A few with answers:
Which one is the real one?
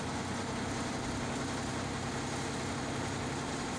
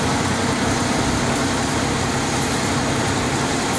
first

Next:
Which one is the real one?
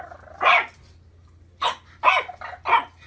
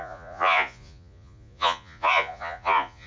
first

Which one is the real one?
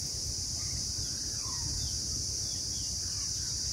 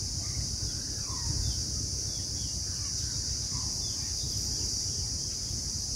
second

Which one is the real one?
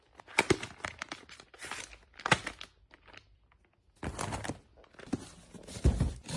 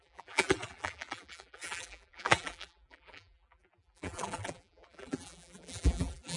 first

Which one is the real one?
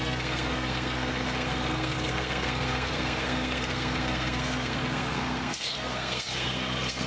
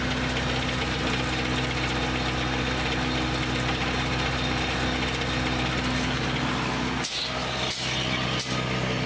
second